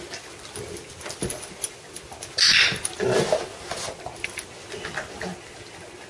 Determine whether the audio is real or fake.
real